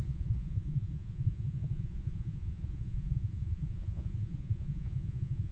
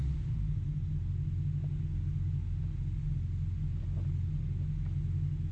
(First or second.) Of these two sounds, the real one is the second